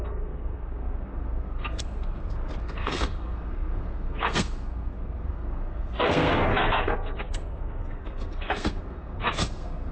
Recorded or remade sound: remade